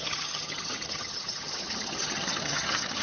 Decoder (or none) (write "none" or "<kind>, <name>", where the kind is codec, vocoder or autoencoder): vocoder, HiFi-GAN